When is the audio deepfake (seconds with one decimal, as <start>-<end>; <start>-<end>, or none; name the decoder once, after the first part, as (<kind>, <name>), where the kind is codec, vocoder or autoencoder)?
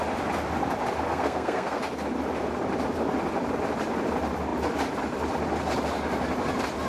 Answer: 1.1-1.8 (codec, SNAC)